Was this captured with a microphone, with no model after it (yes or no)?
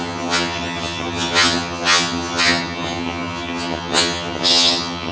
no